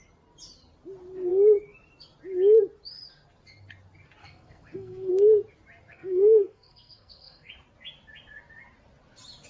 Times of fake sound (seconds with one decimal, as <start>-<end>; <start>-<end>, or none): 4.2-5.1; 5.9-7.5